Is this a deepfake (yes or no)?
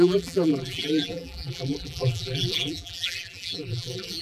yes